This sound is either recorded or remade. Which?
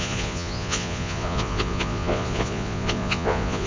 remade